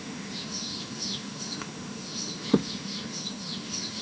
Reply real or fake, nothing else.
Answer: fake